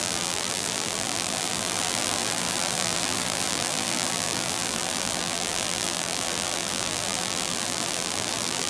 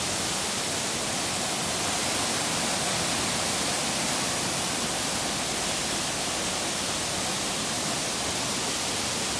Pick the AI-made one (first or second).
first